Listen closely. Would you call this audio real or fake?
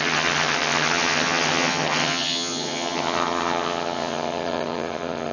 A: fake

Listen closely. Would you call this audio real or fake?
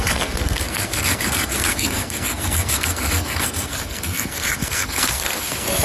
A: fake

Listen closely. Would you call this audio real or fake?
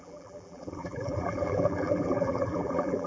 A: fake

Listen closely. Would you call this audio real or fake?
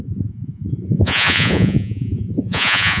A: fake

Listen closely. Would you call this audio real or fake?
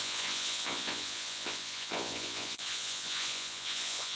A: fake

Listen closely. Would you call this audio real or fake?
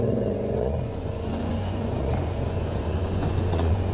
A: fake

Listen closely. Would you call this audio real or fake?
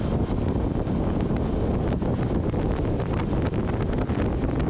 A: real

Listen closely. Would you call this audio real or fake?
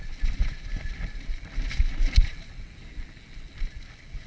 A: real